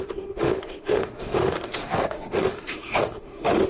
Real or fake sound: fake